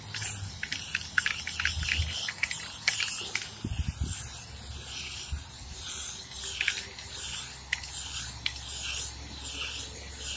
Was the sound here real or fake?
real